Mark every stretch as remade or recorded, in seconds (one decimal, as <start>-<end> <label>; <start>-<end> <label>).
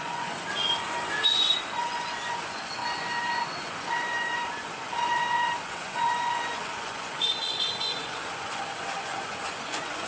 0.0-10.1 remade